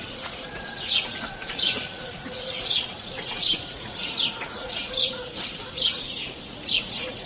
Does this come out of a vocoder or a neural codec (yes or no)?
yes